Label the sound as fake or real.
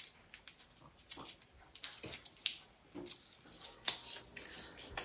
real